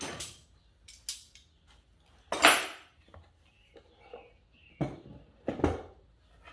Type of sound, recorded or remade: recorded